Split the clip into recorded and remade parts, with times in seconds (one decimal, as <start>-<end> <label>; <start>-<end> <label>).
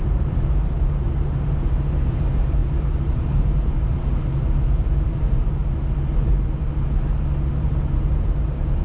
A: 0.0-5.6 remade; 5.6-7.5 recorded; 7.5-8.8 remade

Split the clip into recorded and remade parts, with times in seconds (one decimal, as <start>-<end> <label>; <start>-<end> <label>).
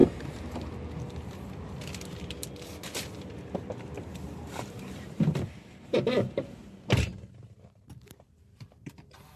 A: 0.0-3.0 recorded; 3.0-9.4 remade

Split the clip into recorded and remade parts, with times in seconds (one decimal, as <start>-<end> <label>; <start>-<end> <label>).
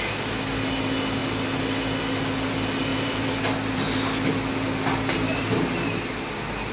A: 0.0-2.9 recorded; 2.9-4.5 remade; 4.5-6.7 recorded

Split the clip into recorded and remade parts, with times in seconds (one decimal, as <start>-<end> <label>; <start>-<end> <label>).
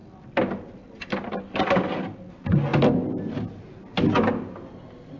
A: 0.0-1.9 remade; 1.9-2.7 recorded; 2.7-3.3 remade; 3.3-5.2 recorded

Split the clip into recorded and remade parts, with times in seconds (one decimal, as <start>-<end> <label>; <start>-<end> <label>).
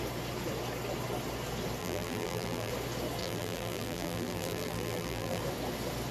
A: 0.0-1.8 recorded; 1.8-2.7 remade; 2.7-3.2 recorded; 3.2-5.4 remade; 5.4-6.1 recorded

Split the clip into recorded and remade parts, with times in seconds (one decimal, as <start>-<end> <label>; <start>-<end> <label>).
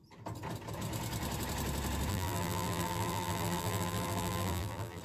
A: 0.0-2.1 recorded; 2.1-5.0 remade